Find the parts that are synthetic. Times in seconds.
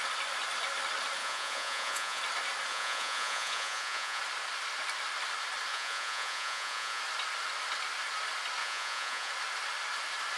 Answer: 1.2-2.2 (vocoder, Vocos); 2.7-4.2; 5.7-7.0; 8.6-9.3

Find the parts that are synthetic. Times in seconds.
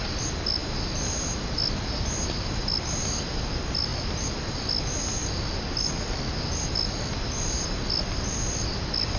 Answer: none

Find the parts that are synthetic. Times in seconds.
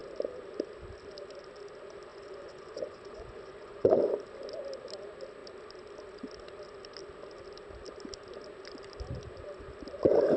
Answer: 2.1-4.0 (vocoder, Vocos)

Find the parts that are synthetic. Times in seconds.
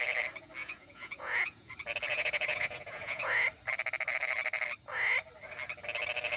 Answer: 0.6-1.7 (vocoder, Vocos); 2.1-3.3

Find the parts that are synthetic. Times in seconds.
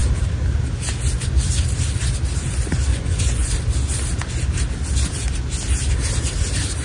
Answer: 2.9-3.5 (vocoder, Vocos)